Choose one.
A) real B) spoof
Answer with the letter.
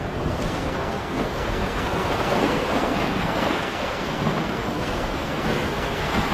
B